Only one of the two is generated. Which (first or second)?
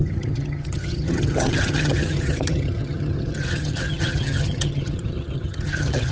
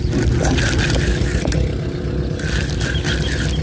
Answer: first